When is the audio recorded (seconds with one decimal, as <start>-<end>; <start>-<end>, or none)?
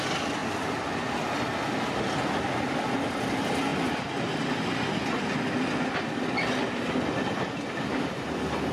0.0-8.7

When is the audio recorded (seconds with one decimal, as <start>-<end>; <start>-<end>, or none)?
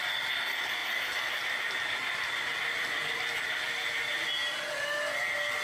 0.0-5.6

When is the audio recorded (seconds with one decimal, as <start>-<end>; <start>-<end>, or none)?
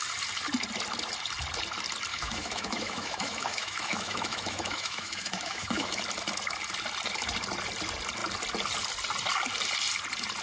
0.0-2.1; 6.0-10.4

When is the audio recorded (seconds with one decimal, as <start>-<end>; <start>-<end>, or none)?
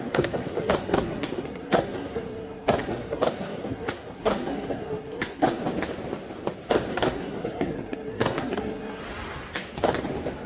5.6-6.9; 9.0-10.5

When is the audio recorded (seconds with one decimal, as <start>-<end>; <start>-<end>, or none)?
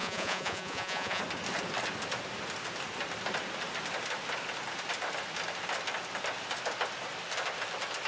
1.2-8.1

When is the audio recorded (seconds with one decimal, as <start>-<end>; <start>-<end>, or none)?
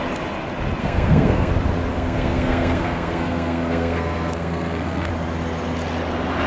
0.0-0.8; 1.5-1.9; 5.1-6.5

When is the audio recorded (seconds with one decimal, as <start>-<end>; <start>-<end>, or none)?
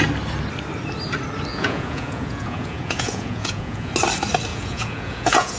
0.0-1.5; 3.9-4.5